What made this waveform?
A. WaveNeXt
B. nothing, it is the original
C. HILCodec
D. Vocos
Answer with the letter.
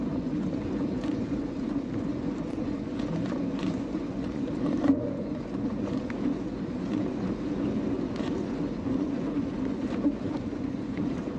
D